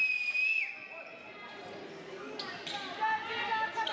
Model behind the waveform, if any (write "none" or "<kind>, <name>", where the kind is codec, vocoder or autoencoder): none